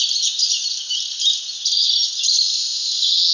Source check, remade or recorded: recorded